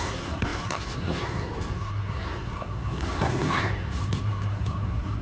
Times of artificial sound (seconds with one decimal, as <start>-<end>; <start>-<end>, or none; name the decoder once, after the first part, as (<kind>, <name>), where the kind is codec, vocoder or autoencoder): 0.0-5.2 (codec, SNAC)